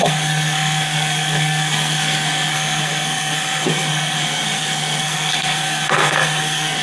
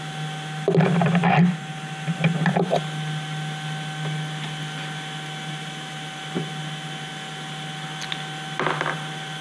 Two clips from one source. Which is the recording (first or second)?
second